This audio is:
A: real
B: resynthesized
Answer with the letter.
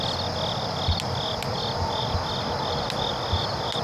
A